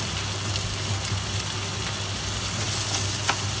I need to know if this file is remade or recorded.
recorded